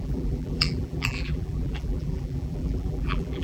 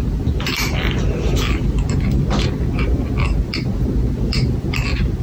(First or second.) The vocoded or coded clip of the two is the first